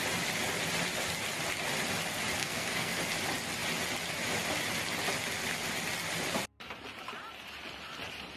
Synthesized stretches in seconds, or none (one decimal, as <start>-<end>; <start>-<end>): 2.4-3.0